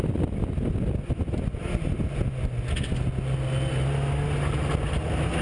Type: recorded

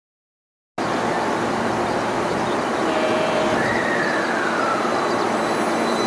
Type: recorded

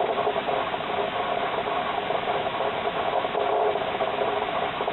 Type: recorded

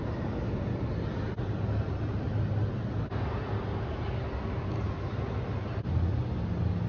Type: recorded